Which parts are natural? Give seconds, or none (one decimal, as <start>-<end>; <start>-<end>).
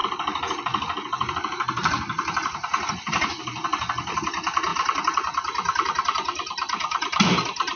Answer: 2.9-4.7